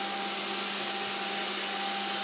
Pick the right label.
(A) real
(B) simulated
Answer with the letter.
A